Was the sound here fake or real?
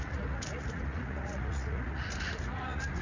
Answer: fake